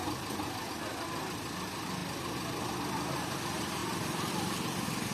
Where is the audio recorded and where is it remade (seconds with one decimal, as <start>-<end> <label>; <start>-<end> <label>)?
0.0-0.7 recorded; 0.7-5.1 remade